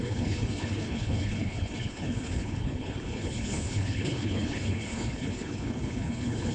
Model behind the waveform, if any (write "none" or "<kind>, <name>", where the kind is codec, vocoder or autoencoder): codec, HILCodec